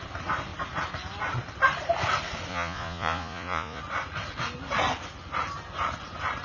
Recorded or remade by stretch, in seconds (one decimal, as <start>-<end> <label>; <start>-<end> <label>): 0.0-2.5 recorded; 2.5-3.8 remade; 3.8-6.4 recorded